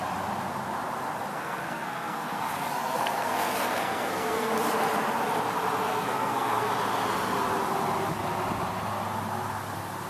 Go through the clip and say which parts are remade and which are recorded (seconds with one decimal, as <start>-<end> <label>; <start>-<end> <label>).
0.0-1.3 recorded; 1.3-4.5 remade; 4.5-5.9 recorded; 5.9-6.7 remade; 6.7-10.1 recorded